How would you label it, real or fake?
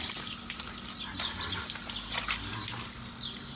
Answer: real